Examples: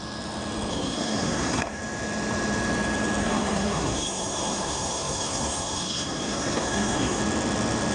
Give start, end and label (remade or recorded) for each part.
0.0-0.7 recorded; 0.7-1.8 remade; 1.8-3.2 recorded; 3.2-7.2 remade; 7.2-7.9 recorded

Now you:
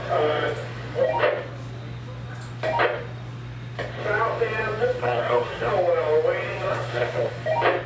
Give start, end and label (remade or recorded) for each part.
0.0-5.0 recorded; 5.0-5.7 remade; 5.7-6.7 recorded; 6.7-7.3 remade; 7.3-7.9 recorded